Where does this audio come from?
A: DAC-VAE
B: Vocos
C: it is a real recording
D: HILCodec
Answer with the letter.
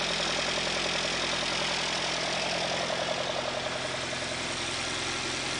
C